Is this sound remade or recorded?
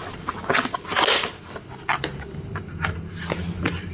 recorded